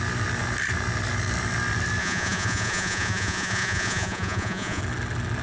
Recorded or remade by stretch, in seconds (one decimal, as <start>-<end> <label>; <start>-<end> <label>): 0.0-2.0 recorded; 2.0-4.8 remade; 4.8-5.4 recorded